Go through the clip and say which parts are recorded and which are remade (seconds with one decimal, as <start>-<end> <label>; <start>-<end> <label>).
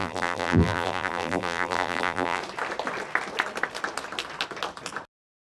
0.0-2.4 remade; 2.4-5.4 recorded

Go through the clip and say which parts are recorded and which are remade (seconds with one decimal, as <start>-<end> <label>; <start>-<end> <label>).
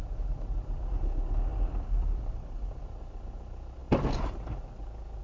0.0-1.5 recorded; 1.5-3.0 remade; 3.0-5.2 recorded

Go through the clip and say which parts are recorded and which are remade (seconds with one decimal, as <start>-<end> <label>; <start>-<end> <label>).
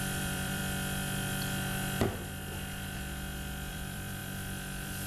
0.0-0.6 remade; 0.6-3.7 recorded; 3.7-4.2 remade; 4.2-5.1 recorded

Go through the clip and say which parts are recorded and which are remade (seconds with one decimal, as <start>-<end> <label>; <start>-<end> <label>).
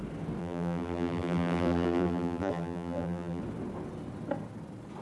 0.0-0.4 recorded; 0.4-3.4 remade; 3.4-5.0 recorded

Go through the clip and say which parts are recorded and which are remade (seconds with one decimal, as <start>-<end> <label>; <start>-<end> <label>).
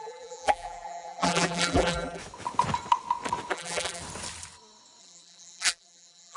0.0-2.2 remade; 2.2-3.5 recorded; 3.5-4.0 remade; 4.0-5.0 recorded; 5.0-6.4 remade